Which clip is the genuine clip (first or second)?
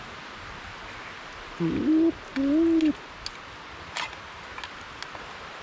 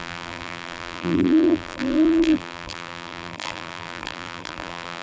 first